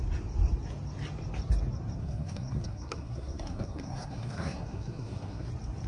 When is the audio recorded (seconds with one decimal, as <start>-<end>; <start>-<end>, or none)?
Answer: 0.0-2.0; 5.5-5.9